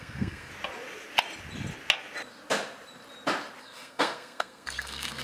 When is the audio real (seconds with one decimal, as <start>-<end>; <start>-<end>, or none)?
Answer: 0.5-3.6